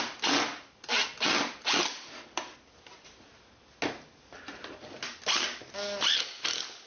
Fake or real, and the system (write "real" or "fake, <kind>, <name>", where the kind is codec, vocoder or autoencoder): real